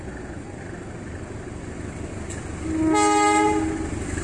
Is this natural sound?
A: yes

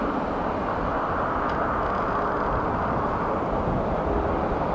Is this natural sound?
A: yes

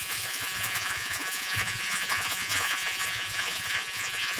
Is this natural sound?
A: no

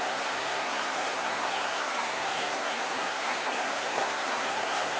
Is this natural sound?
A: no